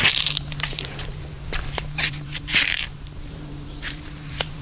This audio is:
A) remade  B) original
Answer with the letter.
A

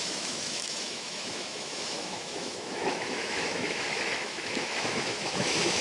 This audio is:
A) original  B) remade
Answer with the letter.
B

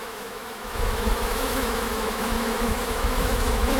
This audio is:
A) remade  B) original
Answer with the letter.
A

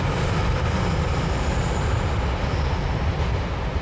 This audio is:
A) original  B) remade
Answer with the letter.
A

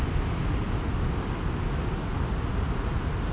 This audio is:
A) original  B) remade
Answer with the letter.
A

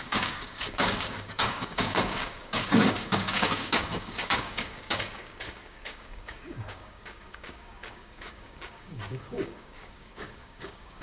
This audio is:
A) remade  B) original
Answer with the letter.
A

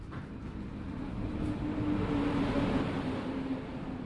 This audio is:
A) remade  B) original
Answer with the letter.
B